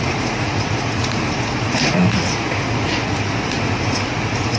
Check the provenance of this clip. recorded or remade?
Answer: remade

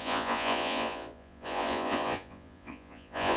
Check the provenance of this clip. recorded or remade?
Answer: remade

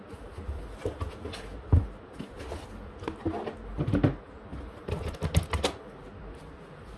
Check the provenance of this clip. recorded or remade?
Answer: recorded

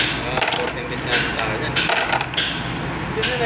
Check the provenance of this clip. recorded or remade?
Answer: recorded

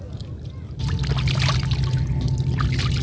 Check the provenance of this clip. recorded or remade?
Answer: recorded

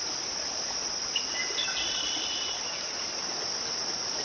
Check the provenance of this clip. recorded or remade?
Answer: recorded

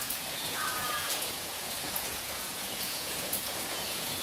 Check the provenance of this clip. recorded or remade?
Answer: remade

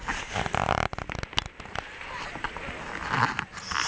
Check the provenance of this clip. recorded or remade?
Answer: recorded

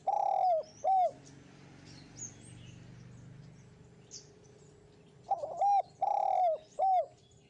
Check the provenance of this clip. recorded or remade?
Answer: recorded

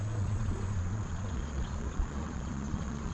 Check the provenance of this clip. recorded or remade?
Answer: remade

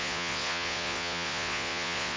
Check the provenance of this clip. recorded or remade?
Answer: remade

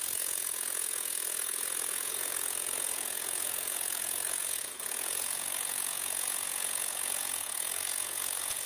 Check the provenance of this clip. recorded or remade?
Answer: remade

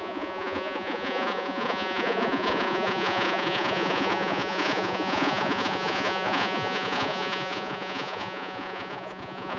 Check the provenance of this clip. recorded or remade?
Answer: remade